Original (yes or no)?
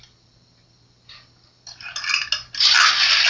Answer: yes